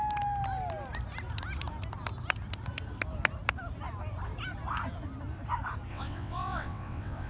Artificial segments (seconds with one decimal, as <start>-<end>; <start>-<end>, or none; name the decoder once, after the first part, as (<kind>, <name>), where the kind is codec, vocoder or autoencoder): 5.9-7.3 (vocoder, WaveNeXt)